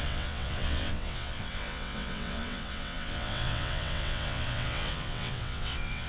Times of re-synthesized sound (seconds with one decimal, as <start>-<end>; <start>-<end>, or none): 0.0-6.1